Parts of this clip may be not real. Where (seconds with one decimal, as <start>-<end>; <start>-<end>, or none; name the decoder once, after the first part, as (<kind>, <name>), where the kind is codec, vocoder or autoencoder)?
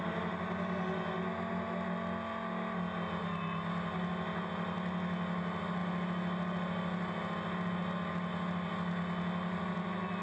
none